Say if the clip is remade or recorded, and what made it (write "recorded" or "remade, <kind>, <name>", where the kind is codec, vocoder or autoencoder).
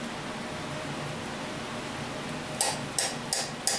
recorded